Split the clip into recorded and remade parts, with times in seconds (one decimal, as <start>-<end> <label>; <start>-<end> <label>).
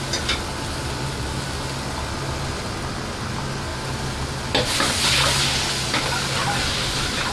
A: 0.0-7.3 recorded